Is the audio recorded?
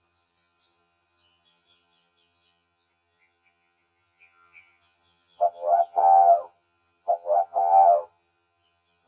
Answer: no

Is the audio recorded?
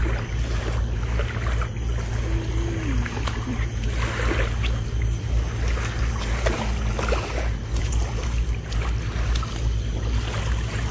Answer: yes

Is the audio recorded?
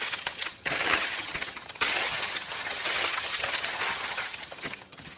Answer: no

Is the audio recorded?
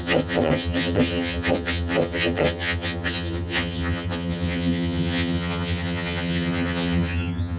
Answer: no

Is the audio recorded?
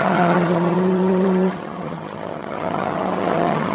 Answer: no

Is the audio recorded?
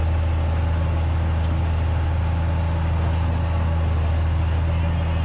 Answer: yes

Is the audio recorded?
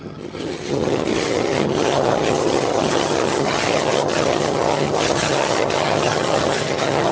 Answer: no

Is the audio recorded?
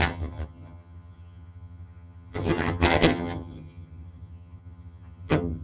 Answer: no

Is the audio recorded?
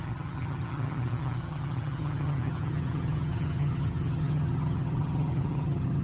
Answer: no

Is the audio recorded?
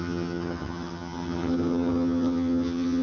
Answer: no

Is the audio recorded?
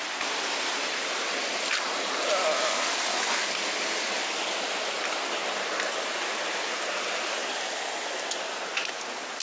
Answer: yes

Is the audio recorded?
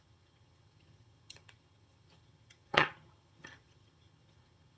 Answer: no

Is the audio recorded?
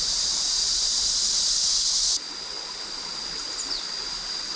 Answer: yes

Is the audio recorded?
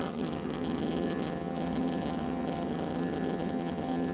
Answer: no